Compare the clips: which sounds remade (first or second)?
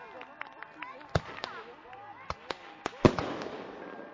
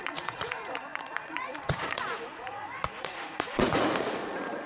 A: second